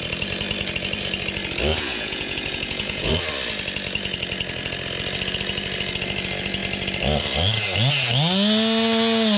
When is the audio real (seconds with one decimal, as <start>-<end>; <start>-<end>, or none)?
0.0-1.7; 3.1-9.4